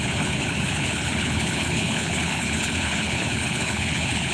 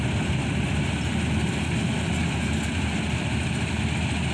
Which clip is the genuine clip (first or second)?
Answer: second